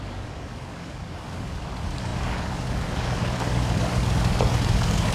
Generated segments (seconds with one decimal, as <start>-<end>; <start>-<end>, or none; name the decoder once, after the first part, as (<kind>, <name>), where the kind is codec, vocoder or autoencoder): 0.0-5.1 (codec, DAC)